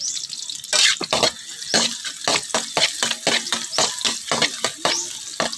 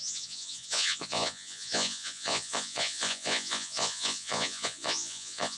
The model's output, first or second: second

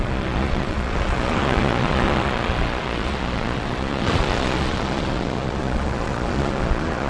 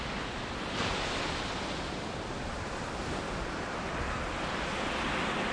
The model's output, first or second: first